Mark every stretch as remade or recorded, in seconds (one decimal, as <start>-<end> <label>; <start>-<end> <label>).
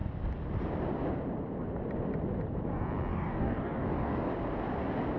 0.0-3.1 recorded; 3.1-4.3 remade; 4.3-5.2 recorded